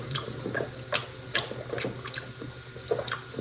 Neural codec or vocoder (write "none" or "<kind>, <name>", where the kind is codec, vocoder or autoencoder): none